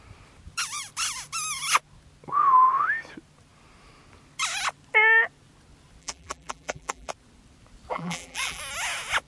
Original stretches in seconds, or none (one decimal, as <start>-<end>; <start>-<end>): 0.0-6.0; 7.1-7.9; 8.6-9.3